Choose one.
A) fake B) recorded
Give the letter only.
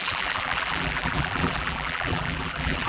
A